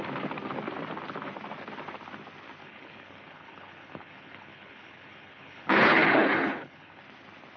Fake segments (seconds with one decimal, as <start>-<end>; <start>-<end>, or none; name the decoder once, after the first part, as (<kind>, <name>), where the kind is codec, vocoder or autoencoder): 2.6-7.0 (codec, HILCodec)